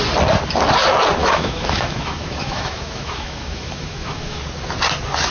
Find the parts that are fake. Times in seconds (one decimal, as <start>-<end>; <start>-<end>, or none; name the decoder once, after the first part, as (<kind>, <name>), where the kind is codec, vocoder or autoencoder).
1.2-4.4 (autoencoder, DAC-VAE)